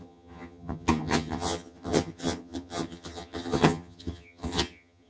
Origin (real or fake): fake